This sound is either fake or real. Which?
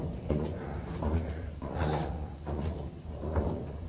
fake